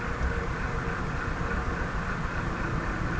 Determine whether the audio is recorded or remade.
recorded